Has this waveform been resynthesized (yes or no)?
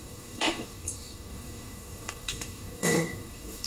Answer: yes